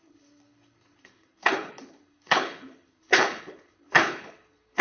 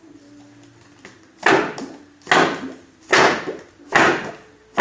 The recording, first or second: second